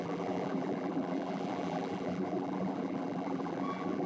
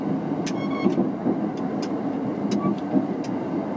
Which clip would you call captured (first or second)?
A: second